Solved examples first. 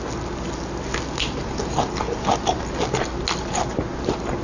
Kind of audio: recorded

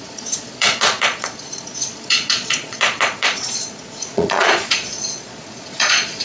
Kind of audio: remade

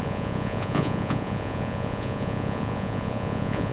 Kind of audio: remade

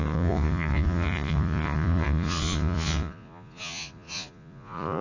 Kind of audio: remade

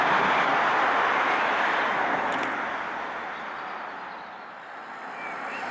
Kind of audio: recorded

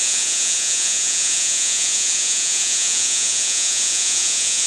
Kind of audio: remade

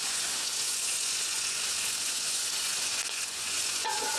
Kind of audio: remade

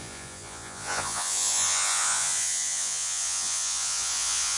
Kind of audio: remade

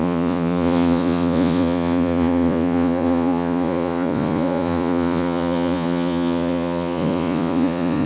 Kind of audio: remade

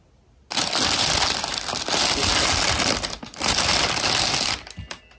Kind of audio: recorded